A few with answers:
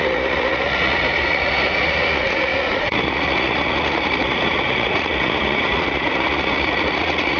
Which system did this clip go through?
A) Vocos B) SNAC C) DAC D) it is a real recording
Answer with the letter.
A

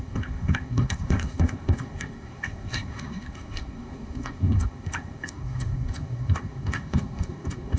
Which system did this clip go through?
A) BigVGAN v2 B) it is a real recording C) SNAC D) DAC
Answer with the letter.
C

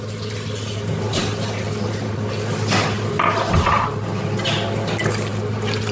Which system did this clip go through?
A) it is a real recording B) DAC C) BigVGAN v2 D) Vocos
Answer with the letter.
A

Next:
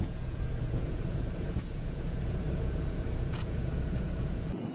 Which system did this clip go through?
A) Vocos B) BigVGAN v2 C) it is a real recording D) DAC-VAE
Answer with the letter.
A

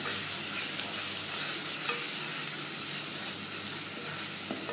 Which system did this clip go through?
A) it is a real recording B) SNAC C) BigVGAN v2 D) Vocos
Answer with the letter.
A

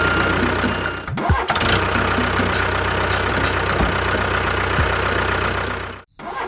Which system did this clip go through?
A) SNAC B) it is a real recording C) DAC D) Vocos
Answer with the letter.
B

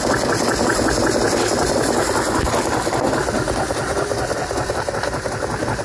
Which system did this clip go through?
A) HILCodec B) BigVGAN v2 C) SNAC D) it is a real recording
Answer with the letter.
D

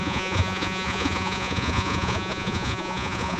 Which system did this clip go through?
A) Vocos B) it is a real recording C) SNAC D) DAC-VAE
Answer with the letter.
A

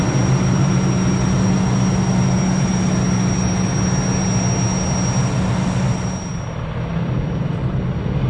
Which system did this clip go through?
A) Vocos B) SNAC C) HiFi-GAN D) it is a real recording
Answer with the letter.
D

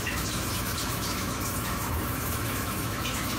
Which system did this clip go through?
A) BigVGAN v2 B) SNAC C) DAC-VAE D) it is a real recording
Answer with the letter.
C